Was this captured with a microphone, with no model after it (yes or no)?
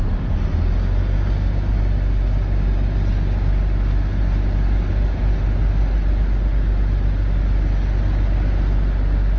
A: yes